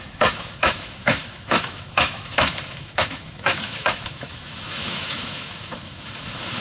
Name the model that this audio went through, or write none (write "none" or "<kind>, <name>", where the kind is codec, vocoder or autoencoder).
autoencoder, DAC-VAE